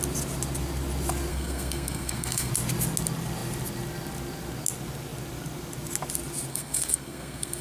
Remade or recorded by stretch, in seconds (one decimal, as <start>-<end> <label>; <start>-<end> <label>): 0.0-1.3 recorded; 1.3-2.5 remade; 2.5-6.5 recorded; 6.5-7.6 remade